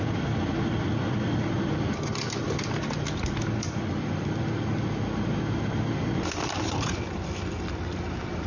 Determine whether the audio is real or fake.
fake